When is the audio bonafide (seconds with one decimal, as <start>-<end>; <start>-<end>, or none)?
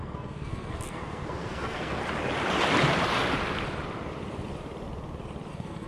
2.0-5.5